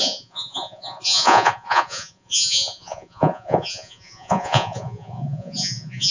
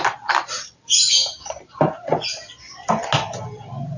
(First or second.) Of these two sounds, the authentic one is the second